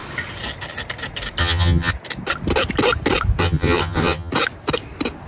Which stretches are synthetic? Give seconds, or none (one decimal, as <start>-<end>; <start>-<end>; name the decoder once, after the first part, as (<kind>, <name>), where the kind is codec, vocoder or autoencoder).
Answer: 1.4-1.9 (vocoder, HiFi-GAN); 3.4-4.3

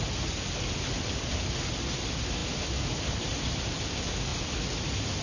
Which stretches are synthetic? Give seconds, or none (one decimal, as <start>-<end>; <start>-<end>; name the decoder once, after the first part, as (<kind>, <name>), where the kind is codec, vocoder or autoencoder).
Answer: none

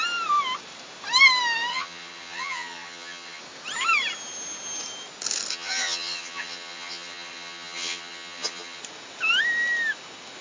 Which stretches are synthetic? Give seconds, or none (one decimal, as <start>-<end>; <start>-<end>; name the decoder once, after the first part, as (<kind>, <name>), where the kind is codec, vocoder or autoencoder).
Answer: 1.7-3.4 (vocoder, HiFi-GAN); 5.5-8.8

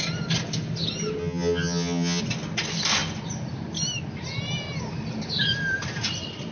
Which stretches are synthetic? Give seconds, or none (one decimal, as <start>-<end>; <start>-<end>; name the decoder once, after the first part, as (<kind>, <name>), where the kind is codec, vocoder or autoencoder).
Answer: 1.2-2.2 (vocoder, HiFi-GAN)

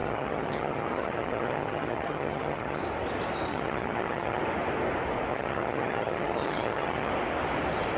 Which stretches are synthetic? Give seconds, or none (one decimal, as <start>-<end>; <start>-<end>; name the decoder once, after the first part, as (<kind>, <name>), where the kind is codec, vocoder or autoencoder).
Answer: 0.0-2.8 (vocoder, HiFi-GAN); 3.5-4.4; 5.3-7.1

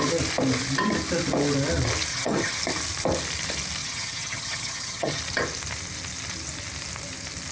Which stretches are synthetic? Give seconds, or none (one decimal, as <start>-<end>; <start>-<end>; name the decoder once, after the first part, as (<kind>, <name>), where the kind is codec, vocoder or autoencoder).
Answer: 2.1-2.6 (vocoder, HiFi-GAN); 3.8-5.2